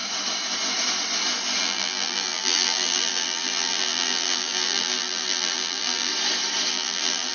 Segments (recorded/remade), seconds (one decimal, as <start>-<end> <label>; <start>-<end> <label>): 0.0-1.6 recorded; 1.6-6.1 remade; 6.1-6.7 recorded; 6.7-7.3 remade